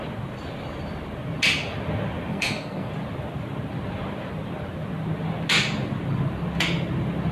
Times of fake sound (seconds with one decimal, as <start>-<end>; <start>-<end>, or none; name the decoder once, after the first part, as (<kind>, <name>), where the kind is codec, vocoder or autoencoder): 2.3-2.9 (codec, SNAC)